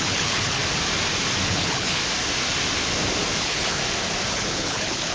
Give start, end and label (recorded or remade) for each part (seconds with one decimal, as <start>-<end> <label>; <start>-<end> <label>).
0.0-0.6 remade; 0.6-1.5 recorded; 1.5-2.0 remade; 2.0-3.4 recorded; 3.4-3.8 remade; 3.8-4.3 recorded; 4.3-5.1 remade